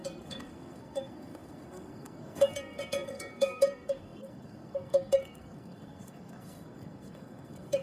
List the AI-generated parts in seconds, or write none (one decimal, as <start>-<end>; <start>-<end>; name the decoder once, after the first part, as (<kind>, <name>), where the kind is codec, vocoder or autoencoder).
0.0-7.8 (codec, SNAC)